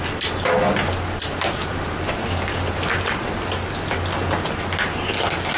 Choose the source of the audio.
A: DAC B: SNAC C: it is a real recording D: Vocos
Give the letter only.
C